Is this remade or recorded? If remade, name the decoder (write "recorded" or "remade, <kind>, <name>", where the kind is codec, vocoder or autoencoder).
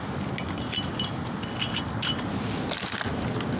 recorded